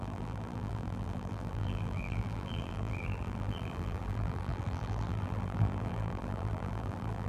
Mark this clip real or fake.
fake